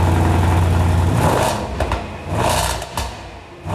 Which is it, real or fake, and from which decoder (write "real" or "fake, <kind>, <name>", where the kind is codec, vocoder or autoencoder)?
real